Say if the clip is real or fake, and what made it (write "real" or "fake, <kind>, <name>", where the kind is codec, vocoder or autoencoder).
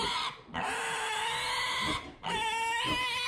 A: real